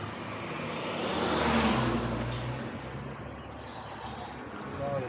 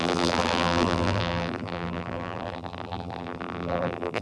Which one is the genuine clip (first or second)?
first